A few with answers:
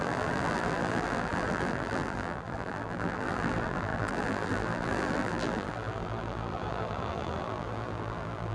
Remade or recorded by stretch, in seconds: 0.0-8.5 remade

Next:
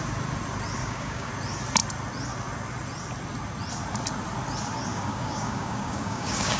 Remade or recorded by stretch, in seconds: 0.0-0.8 recorded; 0.8-1.3 remade; 1.3-4.9 recorded; 4.9-6.6 remade

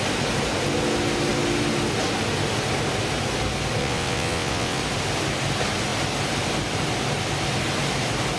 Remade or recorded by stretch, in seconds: 0.0-3.8 recorded; 3.8-4.8 remade; 4.8-8.4 recorded

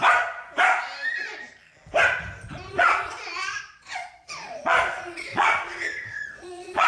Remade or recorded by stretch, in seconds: 0.0-2.7 recorded; 2.7-6.9 remade

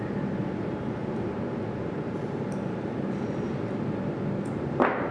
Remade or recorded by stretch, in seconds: 0.0-5.1 recorded